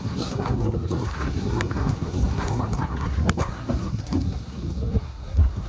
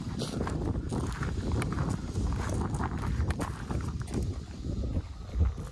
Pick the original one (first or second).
second